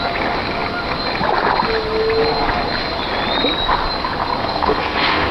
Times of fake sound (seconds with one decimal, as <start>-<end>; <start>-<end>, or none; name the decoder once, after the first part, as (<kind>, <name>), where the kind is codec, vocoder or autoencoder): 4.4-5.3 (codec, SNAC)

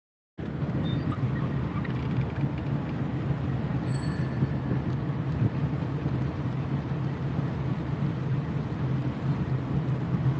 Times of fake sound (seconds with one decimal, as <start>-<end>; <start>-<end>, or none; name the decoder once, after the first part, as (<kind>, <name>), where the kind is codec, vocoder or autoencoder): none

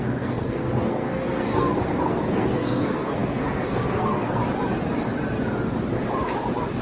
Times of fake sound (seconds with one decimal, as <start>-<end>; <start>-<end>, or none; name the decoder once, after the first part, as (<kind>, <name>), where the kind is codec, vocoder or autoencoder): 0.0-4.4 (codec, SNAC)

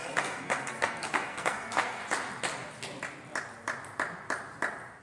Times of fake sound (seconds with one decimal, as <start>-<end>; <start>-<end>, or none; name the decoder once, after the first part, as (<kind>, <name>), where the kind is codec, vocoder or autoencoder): 0.0-2.0 (codec, SNAC)

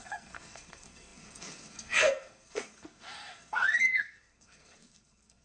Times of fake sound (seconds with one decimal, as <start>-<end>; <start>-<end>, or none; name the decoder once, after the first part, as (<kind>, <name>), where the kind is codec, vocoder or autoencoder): 0.0-5.4 (codec, SNAC)

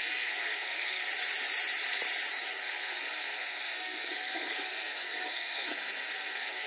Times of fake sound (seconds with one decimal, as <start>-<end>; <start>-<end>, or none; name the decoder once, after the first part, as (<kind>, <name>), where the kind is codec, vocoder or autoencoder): 0.0-1.1 (codec, SNAC); 2.5-6.7

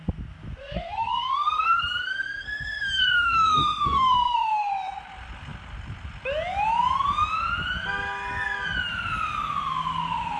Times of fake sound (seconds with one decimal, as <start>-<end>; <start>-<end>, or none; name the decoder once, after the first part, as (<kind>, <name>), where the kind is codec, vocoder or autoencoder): 0.6-4.7 (codec, SNAC)